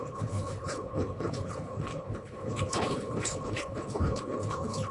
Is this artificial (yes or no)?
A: yes